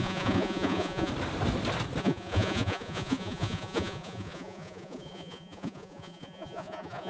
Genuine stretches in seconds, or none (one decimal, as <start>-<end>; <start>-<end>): 1.1-2.0

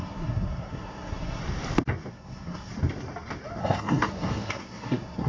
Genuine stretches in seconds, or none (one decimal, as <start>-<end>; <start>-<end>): 1.4-2.1; 2.7-3.6